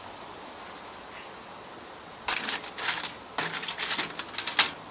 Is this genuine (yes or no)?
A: yes